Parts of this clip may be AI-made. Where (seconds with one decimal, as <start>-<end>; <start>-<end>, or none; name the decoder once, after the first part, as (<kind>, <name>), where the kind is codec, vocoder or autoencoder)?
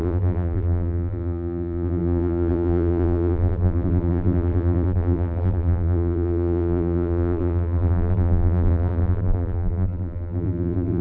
0.0-11.0 (vocoder, BigVGAN v2)